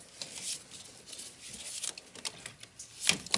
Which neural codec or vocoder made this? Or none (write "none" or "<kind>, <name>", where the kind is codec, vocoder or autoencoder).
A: none